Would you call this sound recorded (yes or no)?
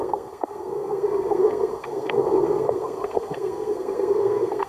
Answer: no